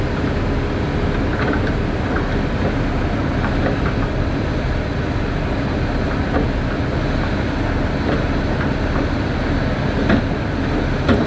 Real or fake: real